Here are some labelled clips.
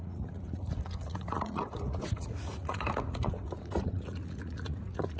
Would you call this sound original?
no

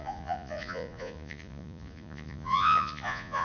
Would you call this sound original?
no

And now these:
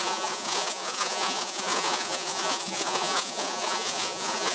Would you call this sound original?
no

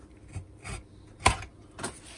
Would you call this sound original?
yes